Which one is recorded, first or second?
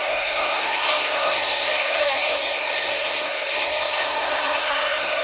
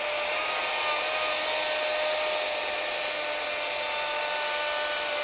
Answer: second